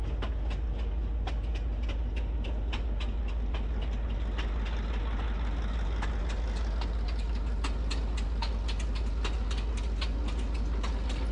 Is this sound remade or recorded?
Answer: recorded